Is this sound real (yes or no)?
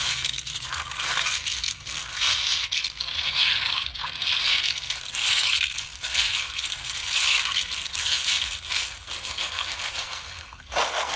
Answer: no